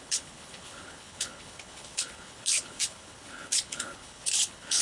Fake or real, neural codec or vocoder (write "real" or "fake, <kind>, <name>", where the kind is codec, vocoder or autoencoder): fake, codec, HILCodec